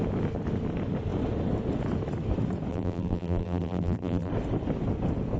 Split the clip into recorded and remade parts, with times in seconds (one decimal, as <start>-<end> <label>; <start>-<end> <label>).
0.0-2.7 recorded; 2.7-4.3 remade; 4.3-5.4 recorded